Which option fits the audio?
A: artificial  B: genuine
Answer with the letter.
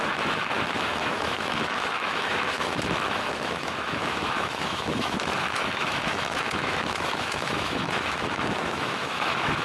A